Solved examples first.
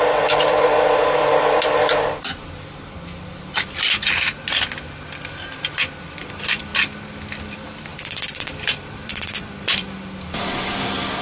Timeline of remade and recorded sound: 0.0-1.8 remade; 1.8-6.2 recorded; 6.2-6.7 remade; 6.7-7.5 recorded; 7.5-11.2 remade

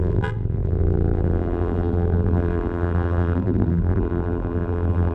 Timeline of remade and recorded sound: 0.0-5.1 remade

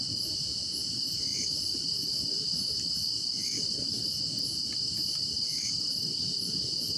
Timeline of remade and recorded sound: 0.0-1.3 recorded; 1.3-4.2 remade; 4.2-5.0 recorded; 5.0-5.7 remade; 5.7-7.0 recorded

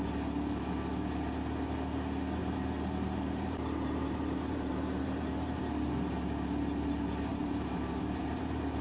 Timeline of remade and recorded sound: 0.0-2.4 recorded; 2.4-5.6 remade; 5.6-7.3 recorded; 7.3-8.8 remade